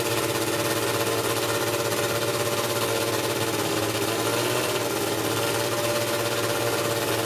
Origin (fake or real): real